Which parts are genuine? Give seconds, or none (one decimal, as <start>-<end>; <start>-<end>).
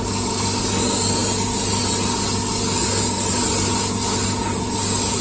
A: 0.0-5.2